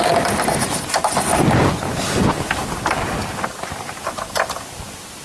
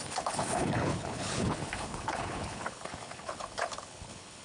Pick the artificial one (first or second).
second